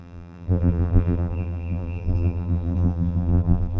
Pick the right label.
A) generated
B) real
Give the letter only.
A